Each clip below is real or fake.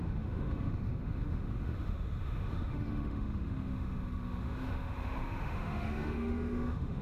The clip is fake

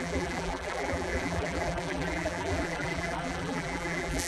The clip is fake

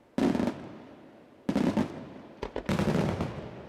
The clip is real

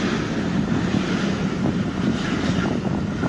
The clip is real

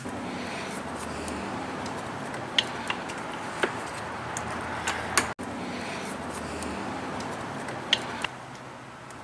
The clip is real